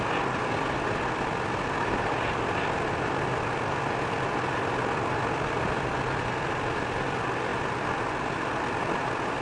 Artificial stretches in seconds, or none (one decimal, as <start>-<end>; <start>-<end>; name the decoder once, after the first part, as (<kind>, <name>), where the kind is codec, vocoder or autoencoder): none